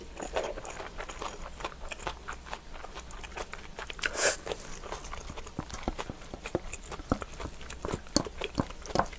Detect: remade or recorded recorded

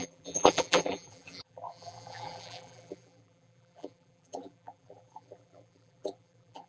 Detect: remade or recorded remade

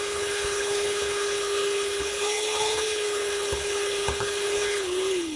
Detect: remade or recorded remade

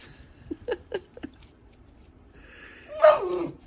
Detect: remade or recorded remade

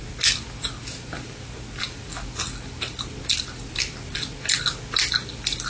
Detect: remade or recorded recorded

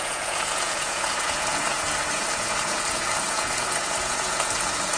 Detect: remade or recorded remade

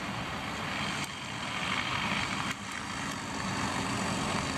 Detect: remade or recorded recorded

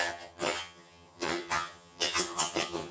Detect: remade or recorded remade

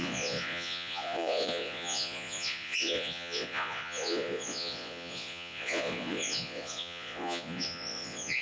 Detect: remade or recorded remade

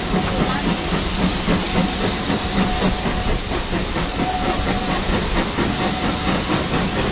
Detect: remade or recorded recorded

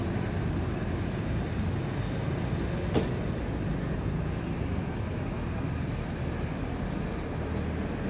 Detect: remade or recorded recorded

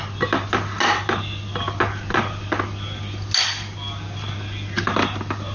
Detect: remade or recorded recorded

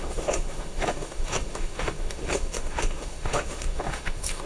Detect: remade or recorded remade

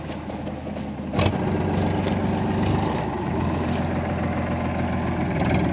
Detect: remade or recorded recorded